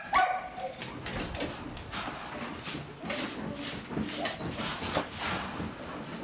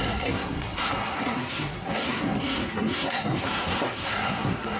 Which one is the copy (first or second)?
second